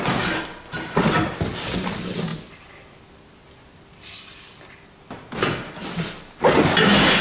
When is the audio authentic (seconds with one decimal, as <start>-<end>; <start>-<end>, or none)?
0.0-7.2